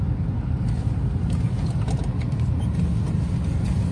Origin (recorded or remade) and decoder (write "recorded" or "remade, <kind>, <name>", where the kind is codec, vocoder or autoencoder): recorded